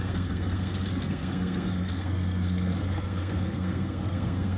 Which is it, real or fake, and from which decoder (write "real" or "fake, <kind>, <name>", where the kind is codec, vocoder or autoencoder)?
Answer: fake, codec, SNAC